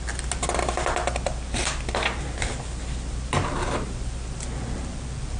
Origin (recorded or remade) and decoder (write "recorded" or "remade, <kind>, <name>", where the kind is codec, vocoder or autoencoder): recorded